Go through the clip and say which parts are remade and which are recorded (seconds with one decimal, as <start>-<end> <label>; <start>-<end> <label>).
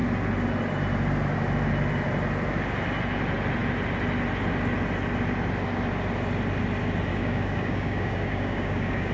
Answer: 0.0-7.1 recorded; 7.1-9.1 remade